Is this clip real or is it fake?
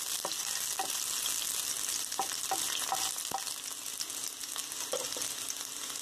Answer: real